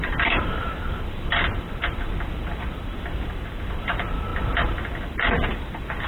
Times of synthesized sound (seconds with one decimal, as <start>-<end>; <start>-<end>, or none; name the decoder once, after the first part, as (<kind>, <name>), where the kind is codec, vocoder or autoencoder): 0.0-6.1 (vocoder, BigVGAN v2)